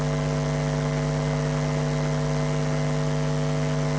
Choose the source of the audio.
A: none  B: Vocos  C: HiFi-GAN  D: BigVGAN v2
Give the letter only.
A